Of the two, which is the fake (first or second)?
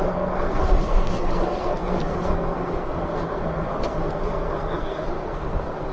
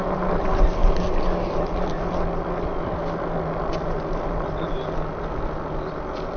first